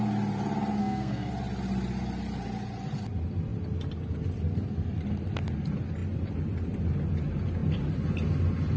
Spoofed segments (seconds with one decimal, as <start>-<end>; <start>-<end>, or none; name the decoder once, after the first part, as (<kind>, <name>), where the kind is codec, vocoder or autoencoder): 0.8-1.3 (codec, SNAC)